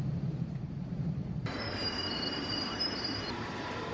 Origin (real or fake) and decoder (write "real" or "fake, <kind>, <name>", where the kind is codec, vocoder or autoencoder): fake, vocoder, BigVGAN v2